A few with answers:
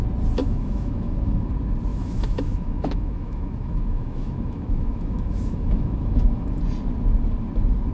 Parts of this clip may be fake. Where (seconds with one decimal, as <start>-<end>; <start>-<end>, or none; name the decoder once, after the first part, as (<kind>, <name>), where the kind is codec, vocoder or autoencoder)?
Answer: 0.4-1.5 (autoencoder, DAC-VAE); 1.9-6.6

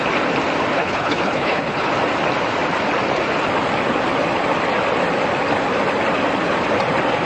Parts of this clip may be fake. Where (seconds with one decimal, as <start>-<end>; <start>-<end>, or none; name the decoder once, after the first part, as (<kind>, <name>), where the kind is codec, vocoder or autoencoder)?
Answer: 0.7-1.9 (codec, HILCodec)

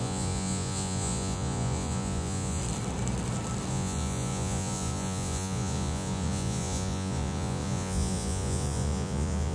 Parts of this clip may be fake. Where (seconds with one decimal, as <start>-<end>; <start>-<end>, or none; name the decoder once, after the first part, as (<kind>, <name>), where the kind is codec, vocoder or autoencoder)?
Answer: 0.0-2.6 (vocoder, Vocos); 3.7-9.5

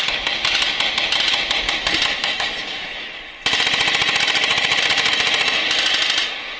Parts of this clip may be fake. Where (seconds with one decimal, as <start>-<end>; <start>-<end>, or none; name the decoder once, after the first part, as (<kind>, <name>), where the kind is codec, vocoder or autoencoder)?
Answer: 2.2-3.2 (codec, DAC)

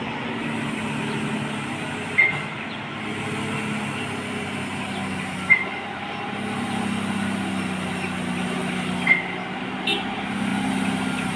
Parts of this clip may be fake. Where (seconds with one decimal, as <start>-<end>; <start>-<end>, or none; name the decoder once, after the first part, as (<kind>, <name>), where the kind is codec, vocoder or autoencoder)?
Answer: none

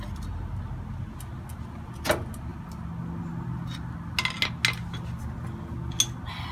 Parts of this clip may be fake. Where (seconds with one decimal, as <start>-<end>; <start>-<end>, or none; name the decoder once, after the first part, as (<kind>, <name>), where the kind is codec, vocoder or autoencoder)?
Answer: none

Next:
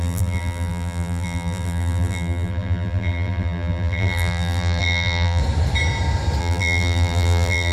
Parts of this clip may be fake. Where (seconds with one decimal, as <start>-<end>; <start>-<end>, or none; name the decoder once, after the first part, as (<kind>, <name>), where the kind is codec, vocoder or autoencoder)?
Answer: 0.0-5.4 (vocoder, BigVGAN v2); 6.4-7.7